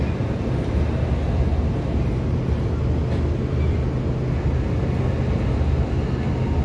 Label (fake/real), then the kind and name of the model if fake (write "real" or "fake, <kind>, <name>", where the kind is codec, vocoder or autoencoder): real